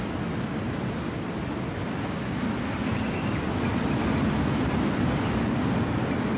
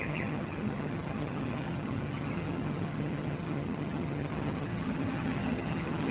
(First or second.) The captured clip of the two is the first